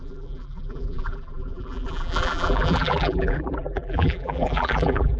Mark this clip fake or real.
fake